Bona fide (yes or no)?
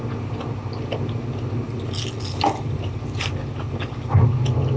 yes